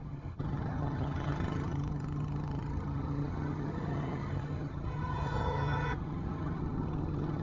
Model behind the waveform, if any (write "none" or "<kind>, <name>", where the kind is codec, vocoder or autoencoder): vocoder, HiFi-GAN